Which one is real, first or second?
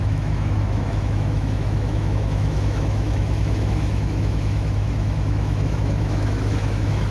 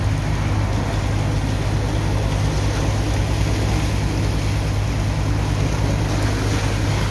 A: second